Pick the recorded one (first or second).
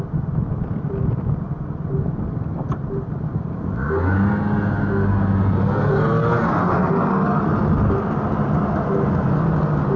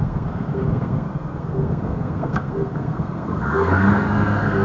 first